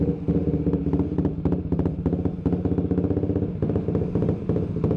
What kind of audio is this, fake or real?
real